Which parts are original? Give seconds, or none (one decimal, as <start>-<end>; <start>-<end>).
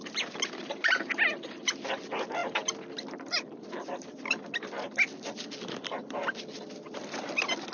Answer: 0.0-7.7